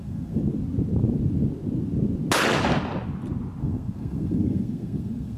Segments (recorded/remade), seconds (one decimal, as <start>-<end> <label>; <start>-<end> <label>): 0.0-0.4 remade; 0.4-3.6 recorded; 3.6-5.4 remade